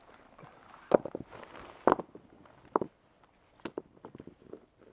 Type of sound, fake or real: real